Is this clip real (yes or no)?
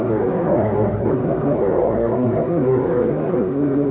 no